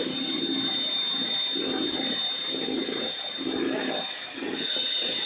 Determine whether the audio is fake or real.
real